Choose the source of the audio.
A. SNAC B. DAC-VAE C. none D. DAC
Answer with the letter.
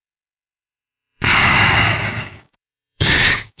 D